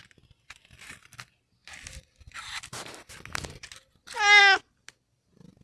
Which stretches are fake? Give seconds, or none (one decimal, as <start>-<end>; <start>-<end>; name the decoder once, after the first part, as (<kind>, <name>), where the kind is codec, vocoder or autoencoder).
none